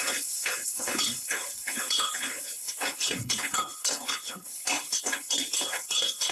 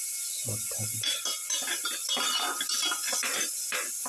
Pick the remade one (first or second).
first